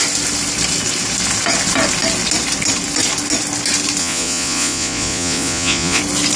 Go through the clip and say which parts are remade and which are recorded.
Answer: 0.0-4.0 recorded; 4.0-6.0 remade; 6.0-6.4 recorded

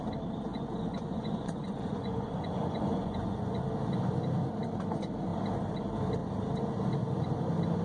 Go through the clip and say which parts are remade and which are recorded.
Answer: 0.0-0.5 recorded; 0.5-3.6 remade; 3.6-7.8 recorded

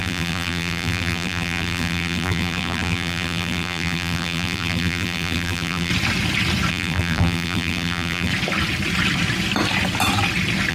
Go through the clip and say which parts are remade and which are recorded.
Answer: 0.0-5.9 remade; 5.9-6.7 recorded; 6.7-8.3 remade; 8.3-10.7 recorded